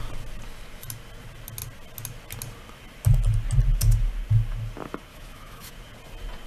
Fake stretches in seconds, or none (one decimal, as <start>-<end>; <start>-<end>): 5.1-5.7